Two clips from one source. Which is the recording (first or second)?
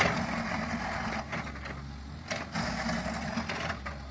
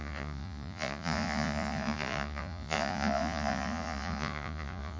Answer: first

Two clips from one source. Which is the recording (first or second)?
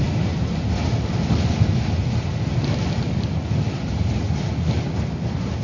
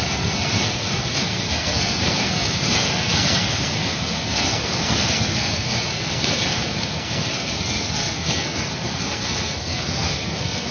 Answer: first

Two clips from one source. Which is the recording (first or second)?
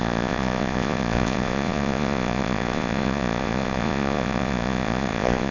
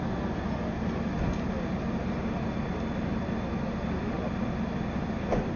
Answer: second